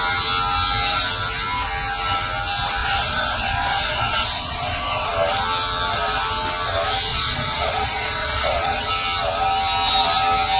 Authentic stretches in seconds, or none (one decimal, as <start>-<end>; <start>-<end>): 0.0-2.8; 5.1-7.1; 8.9-10.6